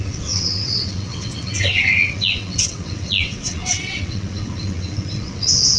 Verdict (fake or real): fake